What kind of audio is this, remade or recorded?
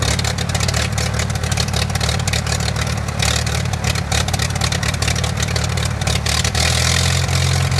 recorded